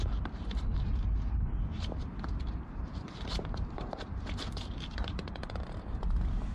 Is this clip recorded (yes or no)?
no